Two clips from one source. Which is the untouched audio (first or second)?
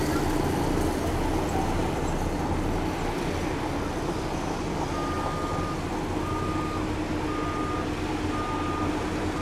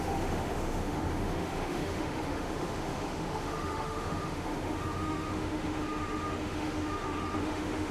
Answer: first